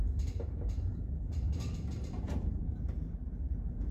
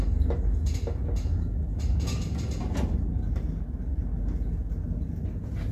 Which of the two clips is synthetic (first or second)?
first